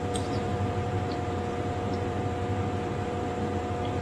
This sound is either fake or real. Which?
fake